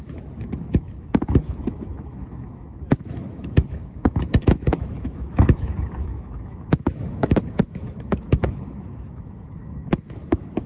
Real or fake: fake